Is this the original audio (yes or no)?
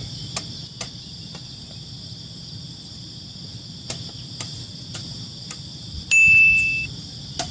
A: yes